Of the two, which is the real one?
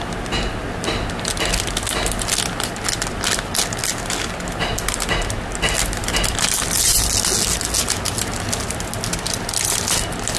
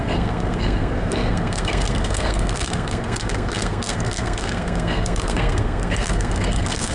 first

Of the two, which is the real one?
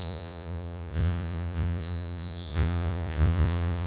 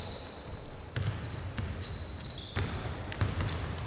second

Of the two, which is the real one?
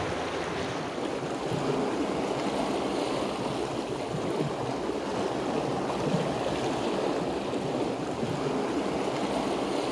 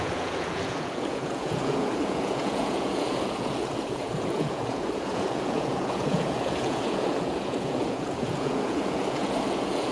first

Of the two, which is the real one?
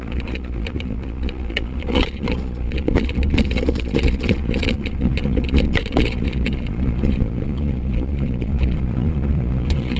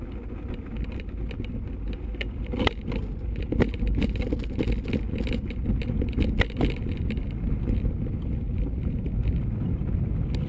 second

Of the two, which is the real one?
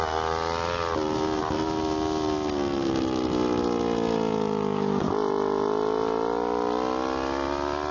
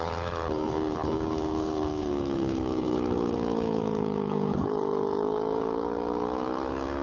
first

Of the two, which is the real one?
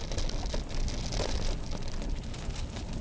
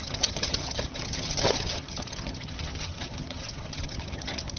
first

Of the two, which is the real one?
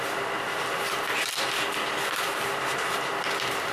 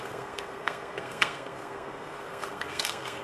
first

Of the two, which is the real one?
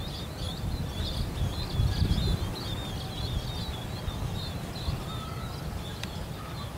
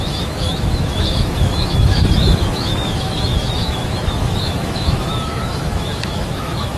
first